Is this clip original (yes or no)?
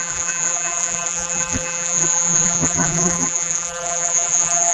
no